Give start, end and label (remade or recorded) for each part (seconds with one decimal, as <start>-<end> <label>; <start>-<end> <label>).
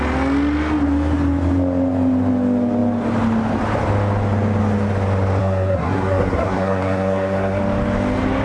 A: 0.0-5.4 recorded; 5.4-7.6 remade; 7.6-8.4 recorded